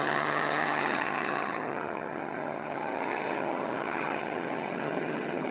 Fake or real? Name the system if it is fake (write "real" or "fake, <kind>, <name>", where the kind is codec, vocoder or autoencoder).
fake, vocoder, HiFi-GAN